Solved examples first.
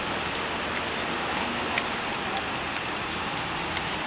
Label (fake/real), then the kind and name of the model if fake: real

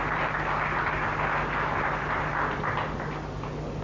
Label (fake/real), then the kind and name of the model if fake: real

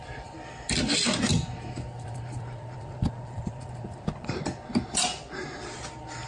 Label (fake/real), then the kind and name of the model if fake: real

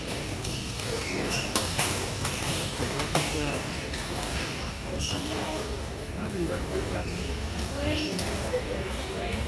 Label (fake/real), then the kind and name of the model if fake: fake, codec, DAC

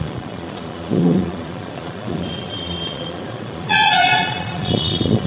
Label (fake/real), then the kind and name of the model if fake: fake, vocoder, Vocos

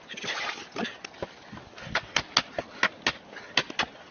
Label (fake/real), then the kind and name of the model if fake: real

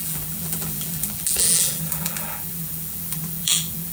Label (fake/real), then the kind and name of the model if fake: fake, vocoder, BigVGAN v2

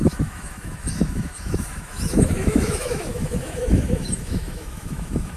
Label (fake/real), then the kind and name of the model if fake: fake, autoencoder, DAC-VAE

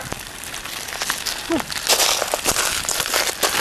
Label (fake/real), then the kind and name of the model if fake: real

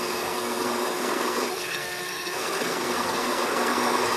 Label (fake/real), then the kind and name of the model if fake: fake, codec, SNAC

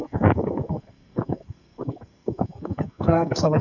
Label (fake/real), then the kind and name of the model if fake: fake, codec, SNAC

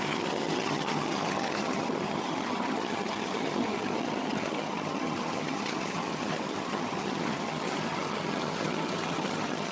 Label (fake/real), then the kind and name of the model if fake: fake, vocoder, HiFi-GAN